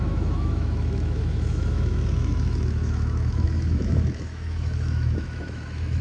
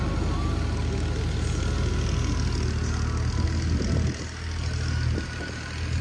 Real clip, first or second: second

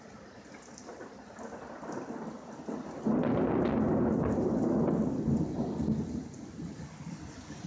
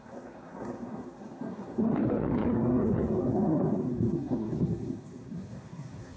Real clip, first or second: first